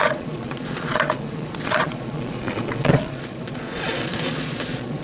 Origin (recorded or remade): remade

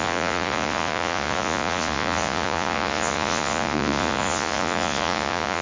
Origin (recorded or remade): remade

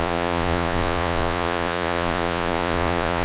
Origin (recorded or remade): remade